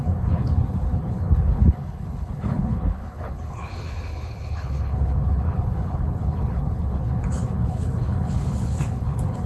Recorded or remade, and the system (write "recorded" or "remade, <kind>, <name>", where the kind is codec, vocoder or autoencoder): remade, codec, HILCodec